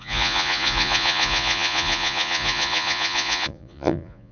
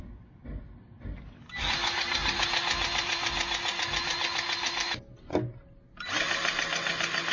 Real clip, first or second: second